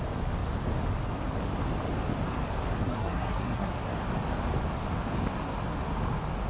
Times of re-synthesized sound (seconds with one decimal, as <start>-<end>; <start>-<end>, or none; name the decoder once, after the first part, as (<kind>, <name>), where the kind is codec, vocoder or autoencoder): 2.8-3.7 (codec, SNAC)